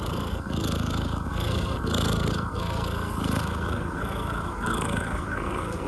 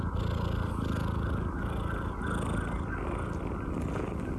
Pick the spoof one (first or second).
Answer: first